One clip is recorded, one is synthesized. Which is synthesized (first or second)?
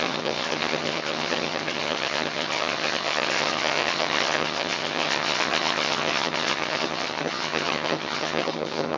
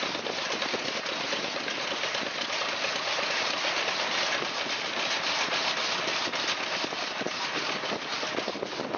first